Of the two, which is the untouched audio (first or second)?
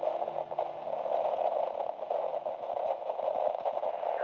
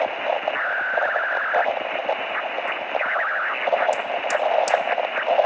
second